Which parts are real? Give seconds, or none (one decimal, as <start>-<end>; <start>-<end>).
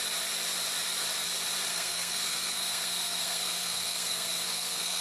0.0-1.7